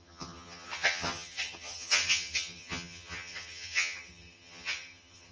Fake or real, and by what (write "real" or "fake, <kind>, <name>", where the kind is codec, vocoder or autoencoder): fake, vocoder, HiFi-GAN